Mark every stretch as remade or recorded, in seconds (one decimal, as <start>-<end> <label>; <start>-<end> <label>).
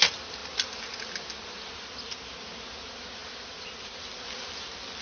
0.0-5.0 recorded